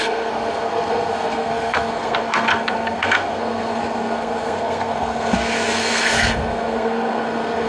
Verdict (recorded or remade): remade